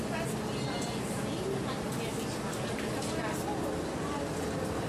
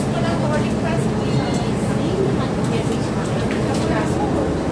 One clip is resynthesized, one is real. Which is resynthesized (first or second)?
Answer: second